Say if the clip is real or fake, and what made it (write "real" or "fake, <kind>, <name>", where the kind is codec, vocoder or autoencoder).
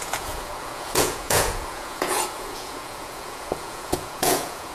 fake, vocoder, Vocos